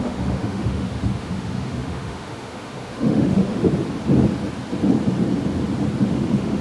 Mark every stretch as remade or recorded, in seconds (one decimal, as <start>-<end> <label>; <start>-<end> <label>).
0.0-3.6 remade; 3.6-6.0 recorded; 6.0-6.6 remade